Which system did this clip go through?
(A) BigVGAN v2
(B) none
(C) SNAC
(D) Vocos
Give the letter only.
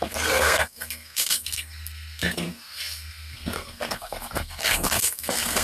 C